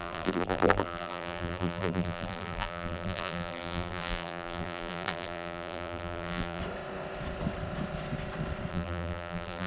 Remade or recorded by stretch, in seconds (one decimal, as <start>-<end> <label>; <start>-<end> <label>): 0.0-6.6 remade; 6.6-8.7 recorded; 8.7-9.7 remade